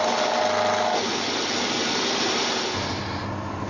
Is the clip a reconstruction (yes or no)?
no